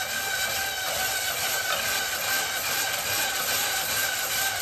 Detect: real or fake real